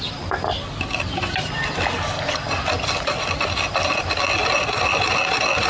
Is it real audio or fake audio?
real